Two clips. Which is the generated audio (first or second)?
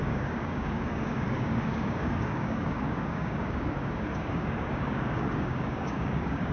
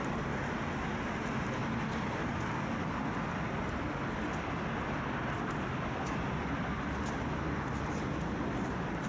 first